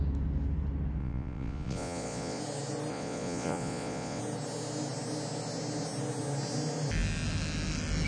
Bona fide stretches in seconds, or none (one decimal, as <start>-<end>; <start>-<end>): 0.0-1.0; 2.4-2.9; 4.2-8.1